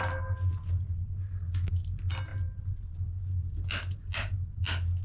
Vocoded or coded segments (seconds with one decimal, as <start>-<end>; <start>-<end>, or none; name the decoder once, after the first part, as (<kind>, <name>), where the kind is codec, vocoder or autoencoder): none